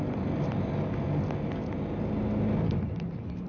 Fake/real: real